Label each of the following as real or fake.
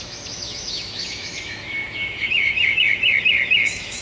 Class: fake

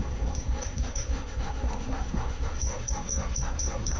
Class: fake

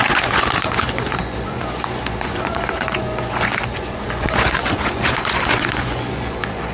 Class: fake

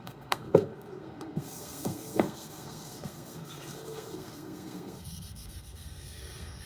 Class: fake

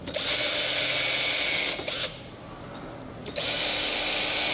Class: real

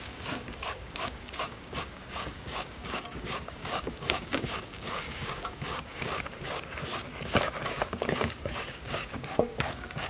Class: fake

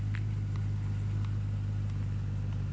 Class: real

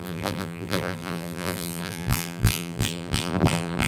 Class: fake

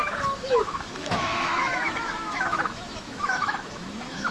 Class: fake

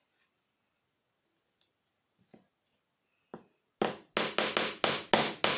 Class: real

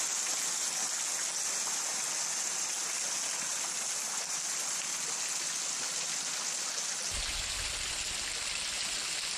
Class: real